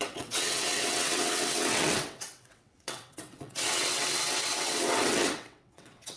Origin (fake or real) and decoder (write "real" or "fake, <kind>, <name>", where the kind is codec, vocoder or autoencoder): fake, vocoder, WaveNeXt